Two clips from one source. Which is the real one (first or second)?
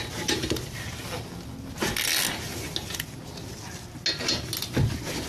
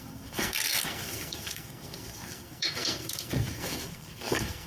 first